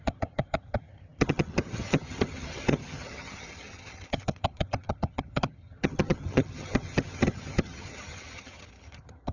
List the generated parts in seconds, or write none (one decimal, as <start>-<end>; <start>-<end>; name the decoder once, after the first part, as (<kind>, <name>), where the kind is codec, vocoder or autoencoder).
0.0-9.3 (vocoder, HiFi-GAN)